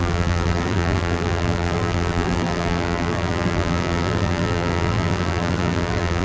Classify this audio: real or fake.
fake